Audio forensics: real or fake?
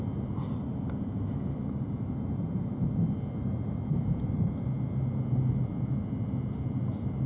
real